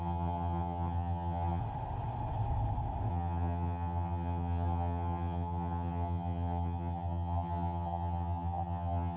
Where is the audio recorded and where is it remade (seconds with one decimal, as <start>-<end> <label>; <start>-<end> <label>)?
0.0-1.6 remade; 1.6-3.1 recorded; 3.1-9.2 remade